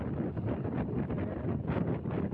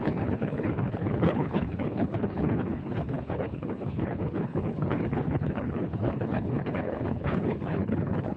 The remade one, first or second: second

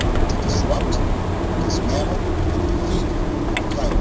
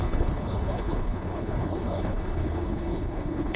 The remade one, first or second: second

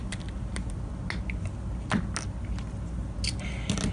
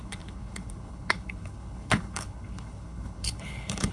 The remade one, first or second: second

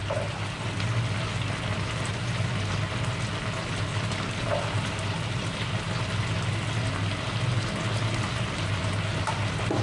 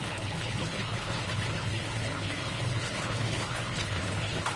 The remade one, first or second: second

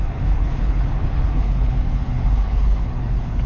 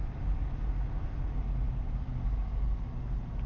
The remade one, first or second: first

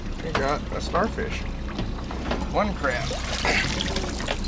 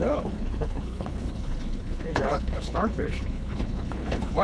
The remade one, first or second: second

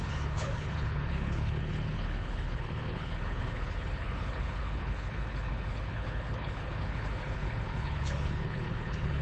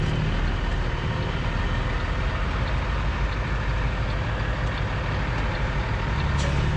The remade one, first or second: first